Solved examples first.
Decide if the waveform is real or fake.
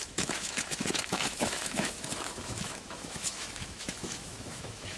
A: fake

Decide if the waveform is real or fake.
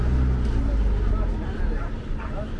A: real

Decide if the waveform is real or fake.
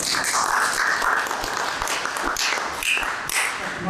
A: real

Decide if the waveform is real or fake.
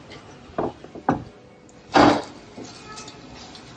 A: real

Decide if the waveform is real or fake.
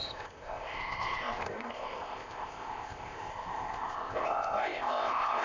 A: fake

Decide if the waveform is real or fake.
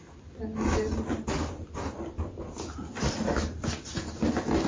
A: real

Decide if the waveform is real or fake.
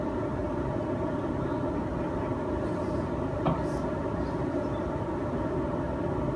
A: real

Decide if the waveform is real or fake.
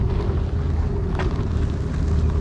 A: real